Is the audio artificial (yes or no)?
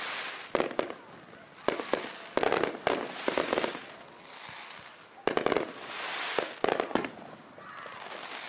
no